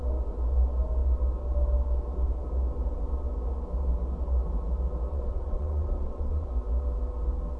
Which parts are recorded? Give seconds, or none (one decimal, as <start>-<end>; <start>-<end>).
0.0-5.1; 6.5-7.6

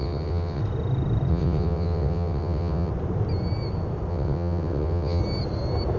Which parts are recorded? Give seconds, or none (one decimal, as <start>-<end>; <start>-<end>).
0.6-1.3; 2.9-4.1; 5.2-6.0

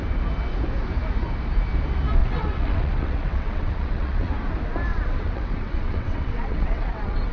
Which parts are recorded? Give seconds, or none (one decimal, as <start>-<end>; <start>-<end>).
0.0-2.2; 4.3-4.9

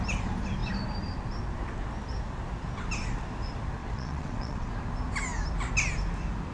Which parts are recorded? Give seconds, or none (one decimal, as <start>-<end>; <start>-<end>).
0.0-3.8; 4.7-6.5

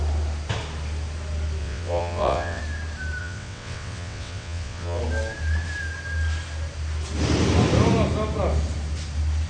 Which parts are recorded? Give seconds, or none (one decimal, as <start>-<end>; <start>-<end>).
0.0-1.6; 2.6-3.2; 5.0-9.5

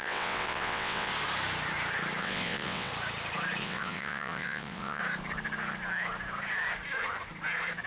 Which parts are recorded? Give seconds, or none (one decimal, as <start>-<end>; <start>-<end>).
1.1-2.2; 2.9-3.6; 5.0-7.9